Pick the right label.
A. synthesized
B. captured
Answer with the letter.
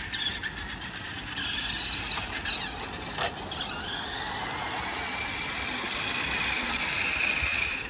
B